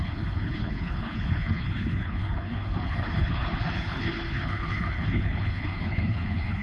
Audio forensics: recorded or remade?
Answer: remade